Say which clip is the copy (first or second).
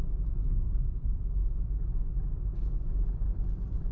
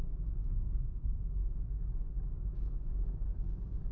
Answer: second